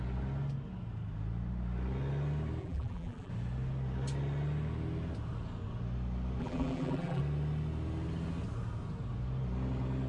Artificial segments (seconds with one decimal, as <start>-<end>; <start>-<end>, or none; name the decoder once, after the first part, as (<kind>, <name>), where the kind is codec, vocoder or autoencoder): 2.6-3.3 (vocoder, BigVGAN v2); 6.4-7.2